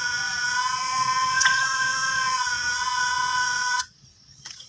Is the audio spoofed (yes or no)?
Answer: yes